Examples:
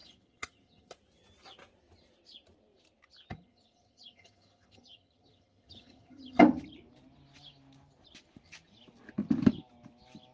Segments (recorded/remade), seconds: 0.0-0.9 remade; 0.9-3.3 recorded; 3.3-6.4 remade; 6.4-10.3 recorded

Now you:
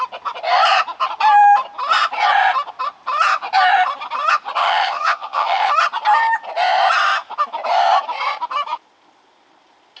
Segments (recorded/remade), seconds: 0.0-4.6 recorded; 4.6-5.7 remade; 5.7-10.0 recorded